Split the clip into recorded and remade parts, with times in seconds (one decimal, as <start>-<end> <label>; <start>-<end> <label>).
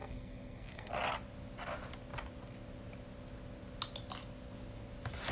0.0-0.9 remade; 0.9-5.3 recorded